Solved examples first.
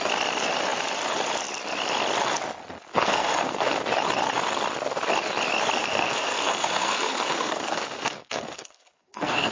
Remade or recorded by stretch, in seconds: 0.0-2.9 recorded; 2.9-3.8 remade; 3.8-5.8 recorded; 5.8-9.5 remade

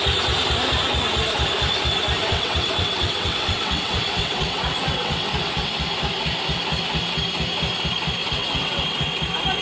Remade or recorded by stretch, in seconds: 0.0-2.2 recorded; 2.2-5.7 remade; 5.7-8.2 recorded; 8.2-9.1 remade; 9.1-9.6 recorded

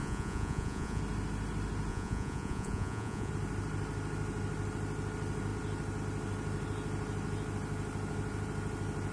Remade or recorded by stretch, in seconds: 0.0-1.0 remade; 1.0-1.9 recorded; 1.9-3.3 remade; 3.3-9.1 recorded

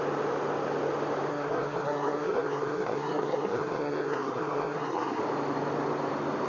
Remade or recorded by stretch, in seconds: 0.0-1.3 recorded; 1.3-5.2 remade; 5.2-6.5 recorded